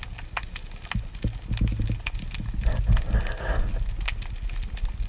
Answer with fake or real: real